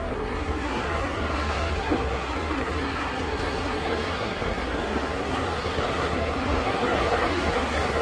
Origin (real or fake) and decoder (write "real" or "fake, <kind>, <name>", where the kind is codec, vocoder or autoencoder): fake, codec, SNAC